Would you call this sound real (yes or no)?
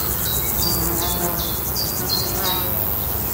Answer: yes